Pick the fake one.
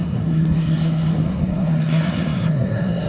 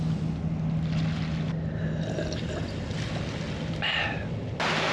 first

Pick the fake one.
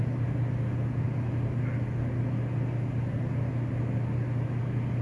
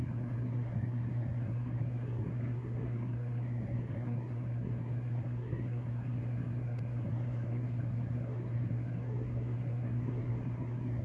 second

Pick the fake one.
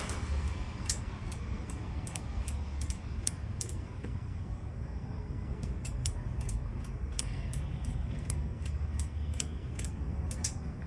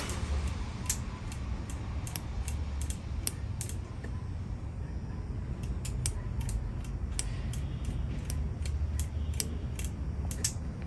first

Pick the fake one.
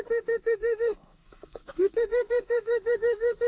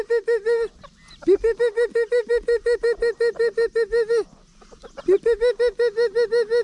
first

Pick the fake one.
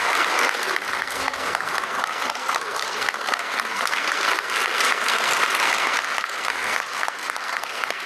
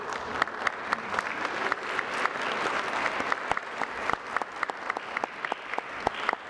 first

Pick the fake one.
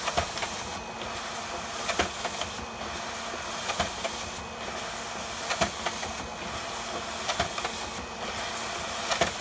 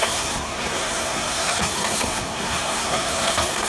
second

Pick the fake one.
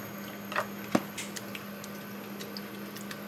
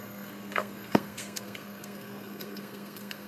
second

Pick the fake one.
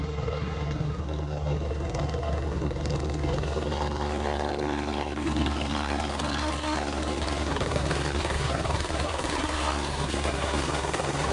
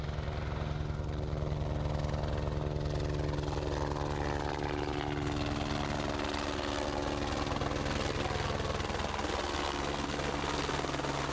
first